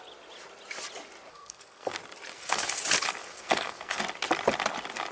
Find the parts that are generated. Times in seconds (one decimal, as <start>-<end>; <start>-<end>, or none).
1.3-1.9; 2.3-2.8; 3.2-4.0